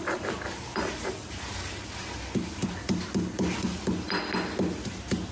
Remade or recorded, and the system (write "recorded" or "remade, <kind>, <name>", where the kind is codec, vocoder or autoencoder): recorded